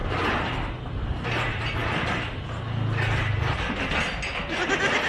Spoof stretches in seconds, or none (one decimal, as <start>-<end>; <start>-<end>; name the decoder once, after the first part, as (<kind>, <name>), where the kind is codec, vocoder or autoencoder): none